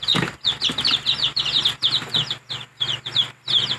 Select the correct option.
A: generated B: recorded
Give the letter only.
A